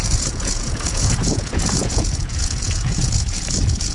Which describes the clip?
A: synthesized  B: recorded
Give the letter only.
A